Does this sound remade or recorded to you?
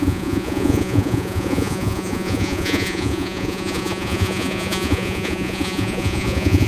remade